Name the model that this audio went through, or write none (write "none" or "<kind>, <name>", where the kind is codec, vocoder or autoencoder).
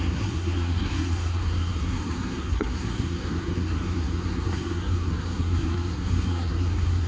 codec, SNAC